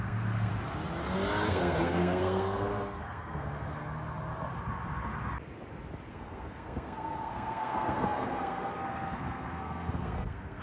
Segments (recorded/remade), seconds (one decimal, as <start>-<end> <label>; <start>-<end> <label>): 0.0-0.5 remade; 0.5-1.5 recorded; 1.5-3.8 remade; 3.8-6.1 recorded; 6.1-10.6 remade